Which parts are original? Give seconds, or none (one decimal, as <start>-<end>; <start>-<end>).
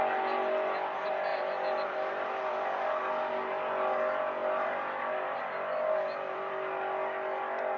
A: 0.0-1.3; 3.0-4.4; 6.5-7.8